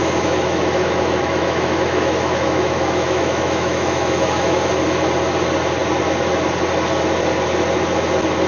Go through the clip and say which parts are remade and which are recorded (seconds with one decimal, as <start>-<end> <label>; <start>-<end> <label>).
0.0-4.7 remade; 4.7-8.5 recorded